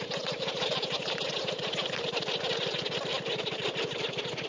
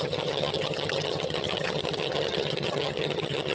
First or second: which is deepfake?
second